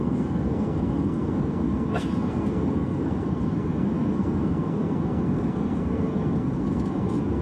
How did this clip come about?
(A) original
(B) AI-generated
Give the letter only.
B